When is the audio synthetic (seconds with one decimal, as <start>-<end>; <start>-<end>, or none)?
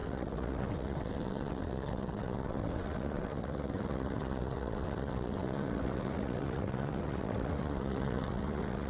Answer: 0.0-8.9